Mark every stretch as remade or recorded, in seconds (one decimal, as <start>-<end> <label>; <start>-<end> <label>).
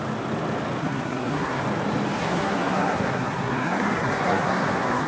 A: 0.0-0.8 recorded; 0.8-1.6 remade; 1.6-2.2 recorded; 2.2-5.1 remade